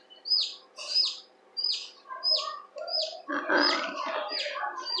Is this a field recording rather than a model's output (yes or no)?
yes